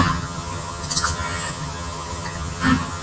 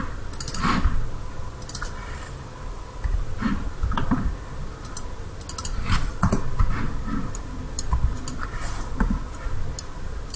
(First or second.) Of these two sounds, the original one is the second